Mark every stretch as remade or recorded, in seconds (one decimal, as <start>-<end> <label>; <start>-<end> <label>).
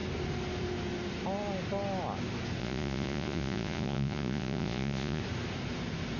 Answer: 0.0-2.6 recorded; 2.6-5.2 remade; 5.2-6.2 recorded